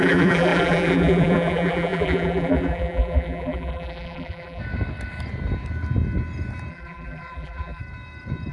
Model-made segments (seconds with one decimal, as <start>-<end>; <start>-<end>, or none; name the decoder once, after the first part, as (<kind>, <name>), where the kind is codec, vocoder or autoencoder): 0.0-4.6 (vocoder, BigVGAN v2); 6.7-7.8